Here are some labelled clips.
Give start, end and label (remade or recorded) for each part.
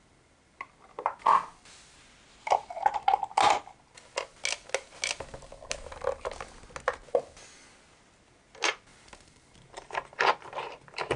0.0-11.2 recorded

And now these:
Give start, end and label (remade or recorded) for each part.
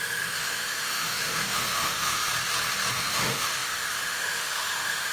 0.0-2.3 remade; 2.3-2.9 recorded; 2.9-5.1 remade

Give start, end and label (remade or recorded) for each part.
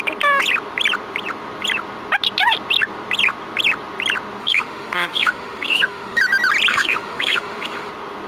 0.0-4.4 recorded; 4.4-6.2 remade; 6.2-6.7 recorded; 6.7-7.9 remade; 7.9-8.3 recorded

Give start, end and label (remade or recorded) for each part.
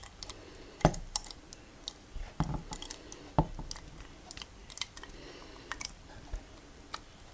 0.0-7.3 recorded